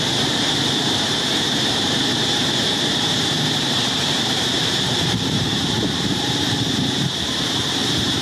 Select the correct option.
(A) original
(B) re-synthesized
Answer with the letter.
B